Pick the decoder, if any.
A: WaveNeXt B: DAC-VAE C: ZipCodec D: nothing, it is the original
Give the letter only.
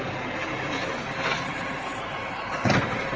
D